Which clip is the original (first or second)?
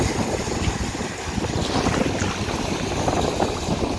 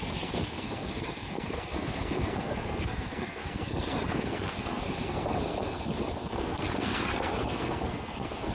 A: first